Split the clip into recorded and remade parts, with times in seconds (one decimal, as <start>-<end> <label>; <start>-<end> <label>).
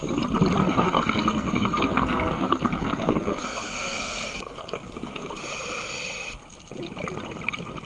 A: 0.0-0.6 recorded; 0.6-5.3 remade; 5.3-7.8 recorded